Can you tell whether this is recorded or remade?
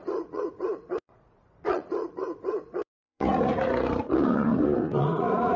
remade